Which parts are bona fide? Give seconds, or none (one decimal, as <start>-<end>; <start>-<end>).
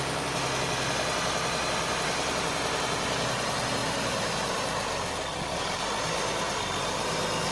0.0-7.5